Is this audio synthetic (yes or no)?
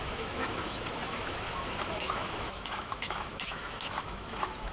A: yes